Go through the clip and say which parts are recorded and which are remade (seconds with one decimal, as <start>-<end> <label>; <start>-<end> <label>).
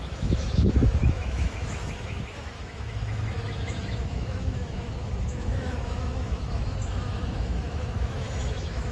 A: 0.0-8.9 remade